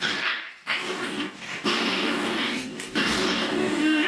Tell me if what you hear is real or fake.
fake